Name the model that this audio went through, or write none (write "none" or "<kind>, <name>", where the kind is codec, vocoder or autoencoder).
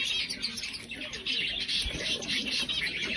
none